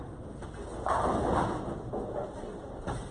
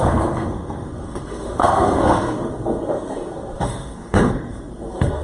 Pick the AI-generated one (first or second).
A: second